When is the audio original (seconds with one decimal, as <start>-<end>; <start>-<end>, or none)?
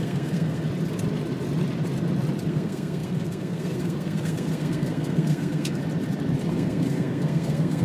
0.6-2.5; 5.8-6.5